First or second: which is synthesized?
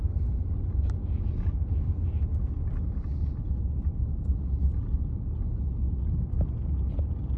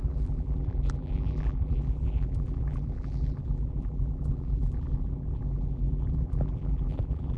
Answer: second